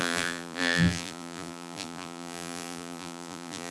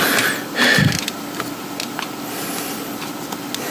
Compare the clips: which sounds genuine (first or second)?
second